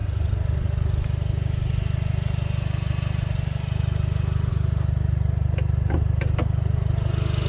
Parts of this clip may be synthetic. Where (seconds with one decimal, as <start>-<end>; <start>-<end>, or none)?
none